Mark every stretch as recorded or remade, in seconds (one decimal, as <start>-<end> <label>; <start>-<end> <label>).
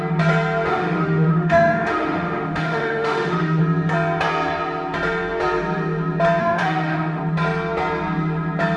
0.0-0.7 recorded; 0.7-3.6 remade; 3.6-6.4 recorded; 6.4-7.2 remade; 7.2-8.8 recorded